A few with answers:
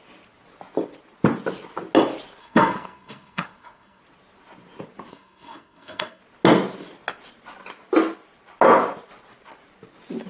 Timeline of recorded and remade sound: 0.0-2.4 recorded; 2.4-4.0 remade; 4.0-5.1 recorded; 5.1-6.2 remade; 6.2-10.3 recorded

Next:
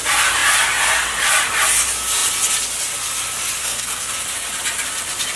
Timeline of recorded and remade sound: 0.0-3.6 recorded; 3.6-4.1 remade; 4.1-5.4 recorded

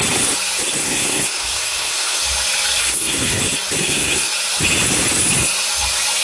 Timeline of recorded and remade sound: 0.0-0.8 recorded; 0.8-2.2 remade; 2.2-2.8 recorded; 2.8-3.4 remade; 3.4-3.8 recorded; 3.8-4.3 remade; 4.3-6.2 recorded

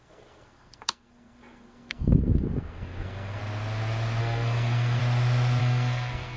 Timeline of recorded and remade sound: 0.0-3.4 remade; 3.4-4.2 recorded; 4.2-5.0 remade; 5.0-5.6 recorded; 5.6-6.4 remade

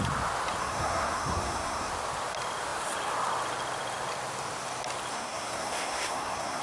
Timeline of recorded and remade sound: 0.0-0.6 recorded; 0.6-1.9 remade; 1.9-5.1 recorded; 5.1-6.6 remade